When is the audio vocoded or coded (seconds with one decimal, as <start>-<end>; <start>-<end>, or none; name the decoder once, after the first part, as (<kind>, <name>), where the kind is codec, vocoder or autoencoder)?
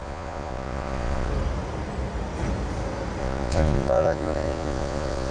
0.0-1.3 (vocoder, Vocos); 3.2-5.3